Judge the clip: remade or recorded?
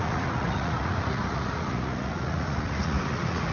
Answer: remade